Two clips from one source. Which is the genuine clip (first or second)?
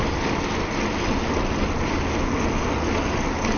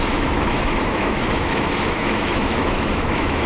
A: first